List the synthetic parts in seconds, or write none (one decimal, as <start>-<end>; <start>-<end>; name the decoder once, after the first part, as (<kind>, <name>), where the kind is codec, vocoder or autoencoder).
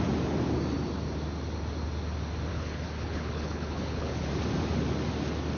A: 2.5-4.3 (codec, HILCodec)